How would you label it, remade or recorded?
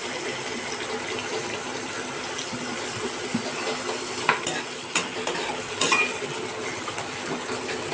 recorded